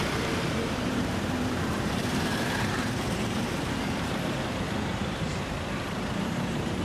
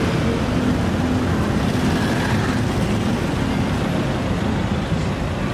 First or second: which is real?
second